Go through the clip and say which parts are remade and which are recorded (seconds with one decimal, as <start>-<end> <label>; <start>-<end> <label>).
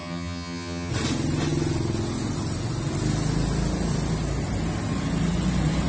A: 0.0-0.9 remade; 0.9-5.9 recorded